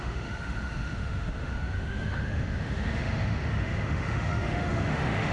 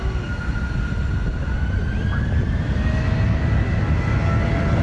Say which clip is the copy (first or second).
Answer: first